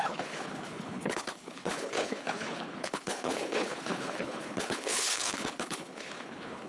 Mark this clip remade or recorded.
remade